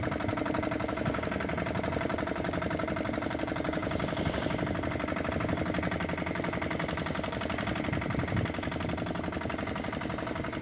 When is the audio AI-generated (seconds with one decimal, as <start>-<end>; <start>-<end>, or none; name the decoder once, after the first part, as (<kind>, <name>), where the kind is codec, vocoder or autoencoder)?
none